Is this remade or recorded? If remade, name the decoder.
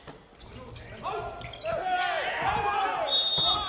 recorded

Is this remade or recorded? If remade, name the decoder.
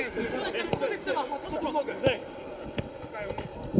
recorded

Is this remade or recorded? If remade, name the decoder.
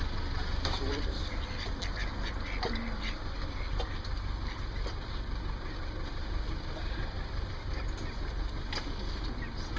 recorded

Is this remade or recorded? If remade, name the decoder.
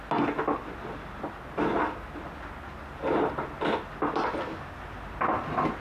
recorded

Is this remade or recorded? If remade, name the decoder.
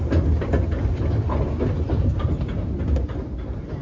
recorded